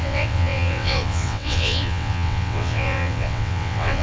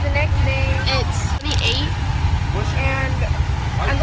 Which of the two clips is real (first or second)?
second